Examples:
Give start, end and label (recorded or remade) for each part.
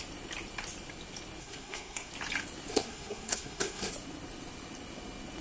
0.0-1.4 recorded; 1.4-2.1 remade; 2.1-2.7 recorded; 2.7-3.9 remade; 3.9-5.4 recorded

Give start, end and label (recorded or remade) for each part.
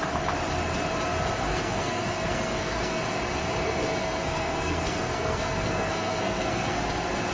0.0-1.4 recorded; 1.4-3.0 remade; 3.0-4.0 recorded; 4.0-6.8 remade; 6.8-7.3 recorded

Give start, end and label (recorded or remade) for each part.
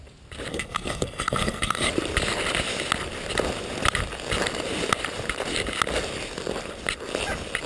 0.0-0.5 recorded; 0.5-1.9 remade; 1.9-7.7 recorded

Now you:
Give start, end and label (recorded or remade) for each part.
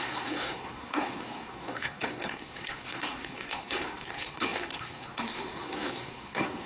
0.0-6.7 remade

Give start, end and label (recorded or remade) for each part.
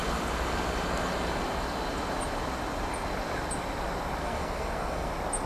0.0-4.2 recorded; 4.2-5.1 remade; 5.1-5.5 recorded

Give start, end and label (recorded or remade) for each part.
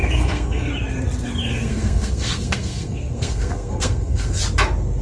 0.0-0.7 remade; 0.7-1.4 recorded; 1.4-4.4 remade; 4.4-5.0 recorded